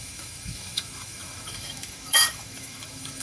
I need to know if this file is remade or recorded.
remade